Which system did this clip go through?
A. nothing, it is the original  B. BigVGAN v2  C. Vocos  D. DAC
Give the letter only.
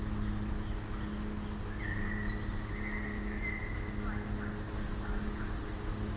A